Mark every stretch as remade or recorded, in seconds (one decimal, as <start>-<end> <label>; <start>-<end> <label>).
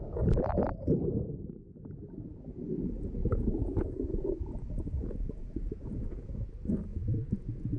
0.0-3.2 recorded; 3.2-6.5 remade; 6.5-6.9 recorded; 6.9-7.8 remade